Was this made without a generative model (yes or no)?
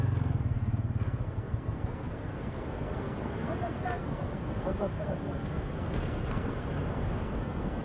no